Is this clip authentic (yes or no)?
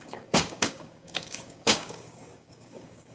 no